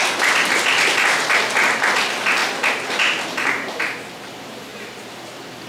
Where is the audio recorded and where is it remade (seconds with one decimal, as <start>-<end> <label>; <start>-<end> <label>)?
0.0-5.7 recorded